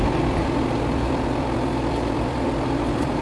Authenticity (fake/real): fake